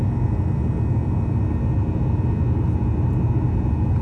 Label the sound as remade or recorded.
recorded